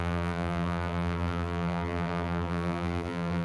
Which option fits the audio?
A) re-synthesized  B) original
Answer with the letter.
A